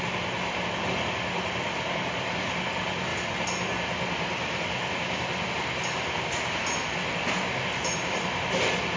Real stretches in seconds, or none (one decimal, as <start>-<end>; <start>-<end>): 0.0-9.0